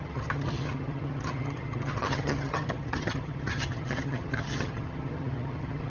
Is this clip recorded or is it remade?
remade